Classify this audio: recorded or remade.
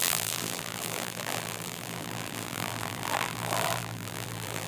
remade